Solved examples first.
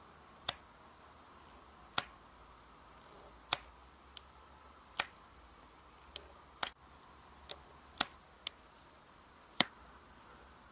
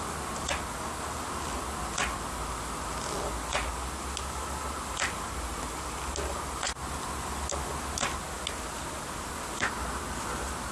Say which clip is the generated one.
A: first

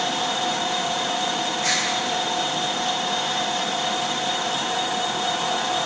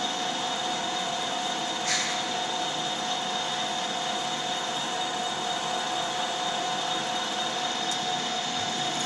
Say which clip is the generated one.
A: first